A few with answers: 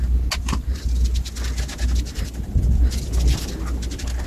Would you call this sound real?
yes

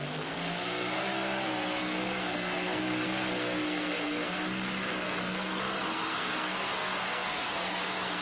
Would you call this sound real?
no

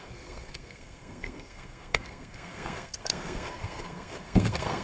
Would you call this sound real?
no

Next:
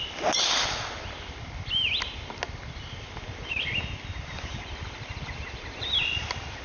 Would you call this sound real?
yes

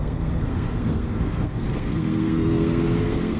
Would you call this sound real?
no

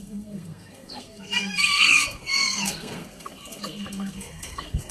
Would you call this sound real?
no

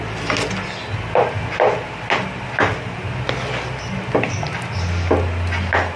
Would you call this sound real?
yes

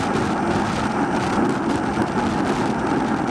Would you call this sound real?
yes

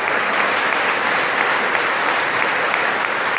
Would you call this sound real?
yes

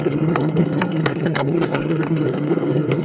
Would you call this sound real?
no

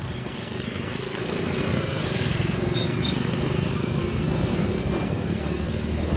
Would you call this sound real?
no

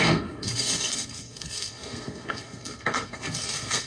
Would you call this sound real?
no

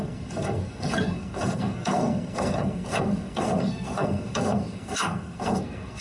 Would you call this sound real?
no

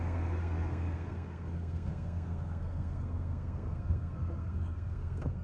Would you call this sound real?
no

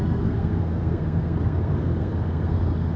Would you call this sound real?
no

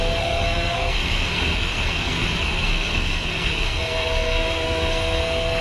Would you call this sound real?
no